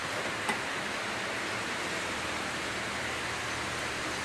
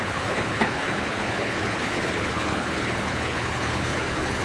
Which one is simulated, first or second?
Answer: second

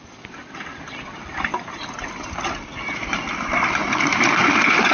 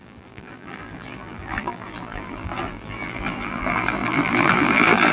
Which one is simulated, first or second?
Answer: second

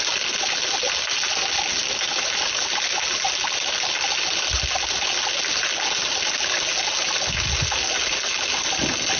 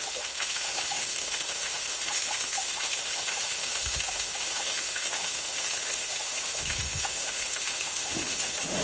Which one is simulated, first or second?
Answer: second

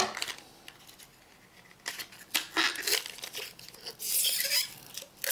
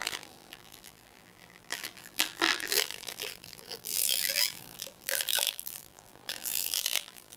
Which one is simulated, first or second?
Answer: second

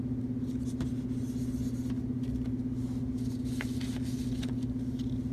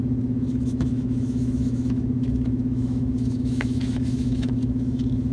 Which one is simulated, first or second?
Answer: second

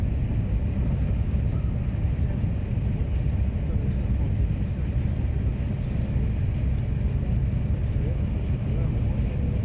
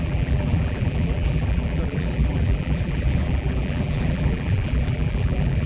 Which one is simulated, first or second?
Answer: second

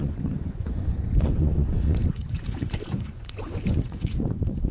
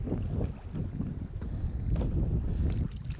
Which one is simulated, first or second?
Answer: first